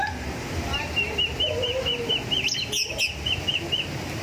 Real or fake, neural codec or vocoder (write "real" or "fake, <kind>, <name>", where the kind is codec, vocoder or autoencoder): real